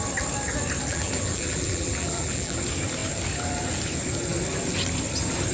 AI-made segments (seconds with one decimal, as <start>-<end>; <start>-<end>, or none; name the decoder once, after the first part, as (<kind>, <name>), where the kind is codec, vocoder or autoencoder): 0.9-2.6 (vocoder, BigVGAN v2)